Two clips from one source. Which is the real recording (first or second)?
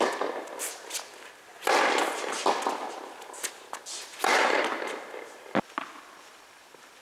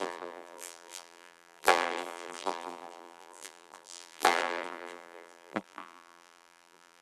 first